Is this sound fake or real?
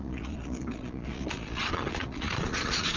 fake